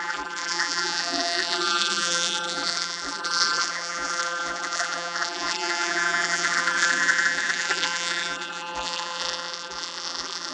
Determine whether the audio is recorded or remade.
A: remade